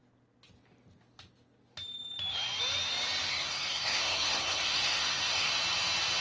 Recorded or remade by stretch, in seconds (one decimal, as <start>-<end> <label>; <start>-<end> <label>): 0.0-3.3 recorded; 3.3-5.5 remade; 5.5-6.2 recorded